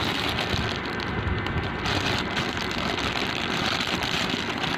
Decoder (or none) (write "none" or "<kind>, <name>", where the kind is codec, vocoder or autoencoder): none